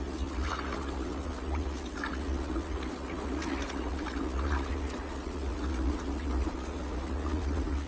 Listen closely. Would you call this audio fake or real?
fake